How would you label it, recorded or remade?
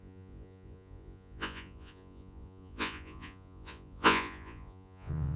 remade